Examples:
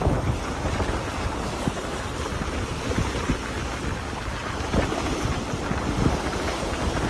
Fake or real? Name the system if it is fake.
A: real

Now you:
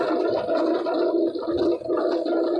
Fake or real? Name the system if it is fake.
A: real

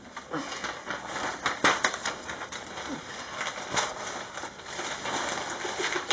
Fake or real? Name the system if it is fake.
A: real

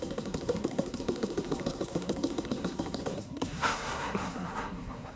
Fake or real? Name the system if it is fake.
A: fake, codec, SNAC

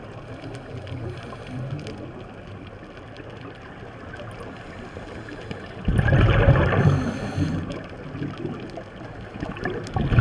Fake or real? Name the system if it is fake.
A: real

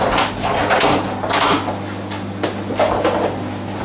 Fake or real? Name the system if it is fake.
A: real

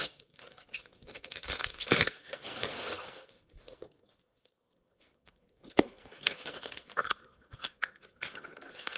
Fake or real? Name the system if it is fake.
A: fake, codec, SNAC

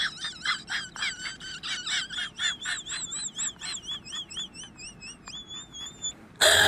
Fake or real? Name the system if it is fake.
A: real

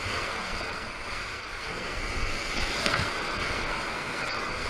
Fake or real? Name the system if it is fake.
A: fake, codec, SNAC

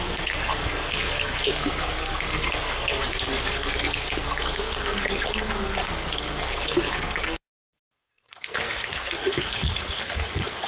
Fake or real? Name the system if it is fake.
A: fake, codec, SNAC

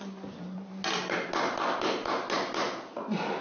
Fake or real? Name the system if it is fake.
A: real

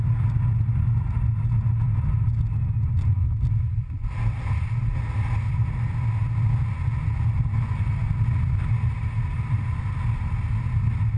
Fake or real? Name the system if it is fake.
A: real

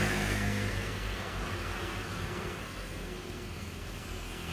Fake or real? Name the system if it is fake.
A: fake, codec, SNAC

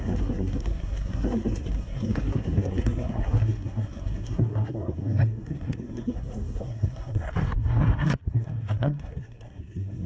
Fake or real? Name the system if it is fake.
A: fake, codec, SNAC